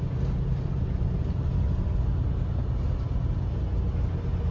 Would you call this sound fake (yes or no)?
no